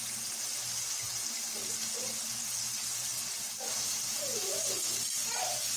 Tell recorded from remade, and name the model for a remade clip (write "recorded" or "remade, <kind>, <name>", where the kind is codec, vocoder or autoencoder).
recorded